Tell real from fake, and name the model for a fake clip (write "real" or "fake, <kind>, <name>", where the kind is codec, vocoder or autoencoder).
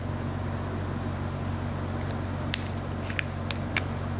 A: real